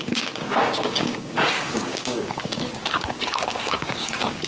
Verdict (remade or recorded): remade